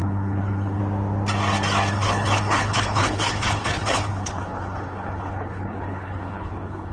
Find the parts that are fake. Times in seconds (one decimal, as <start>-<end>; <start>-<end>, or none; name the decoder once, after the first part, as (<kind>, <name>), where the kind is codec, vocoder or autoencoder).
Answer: 0.0-0.8 (codec, HILCodec); 1.9-6.9